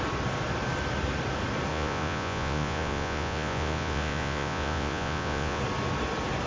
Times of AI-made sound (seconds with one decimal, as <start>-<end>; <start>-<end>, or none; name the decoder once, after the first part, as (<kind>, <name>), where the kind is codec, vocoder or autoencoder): 1.7-5.6 (vocoder, Vocos)